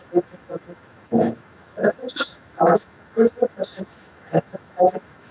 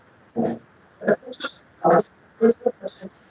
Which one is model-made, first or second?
first